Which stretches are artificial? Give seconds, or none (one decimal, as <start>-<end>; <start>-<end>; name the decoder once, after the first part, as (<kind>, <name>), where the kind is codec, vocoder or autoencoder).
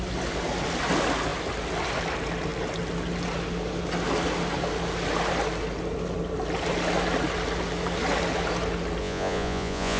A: 9.0-10.0 (vocoder, Vocos)